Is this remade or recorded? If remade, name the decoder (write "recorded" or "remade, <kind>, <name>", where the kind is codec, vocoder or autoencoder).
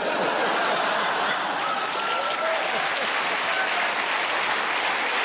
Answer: recorded